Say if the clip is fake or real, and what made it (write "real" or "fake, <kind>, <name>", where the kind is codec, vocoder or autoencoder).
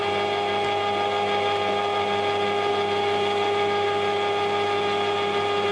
real